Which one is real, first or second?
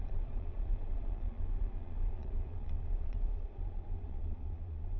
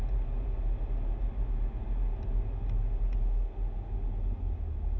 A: second